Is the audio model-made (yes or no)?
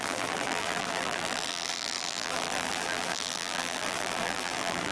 yes